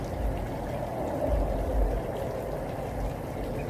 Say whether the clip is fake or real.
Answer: real